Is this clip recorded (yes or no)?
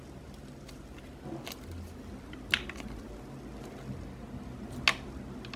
yes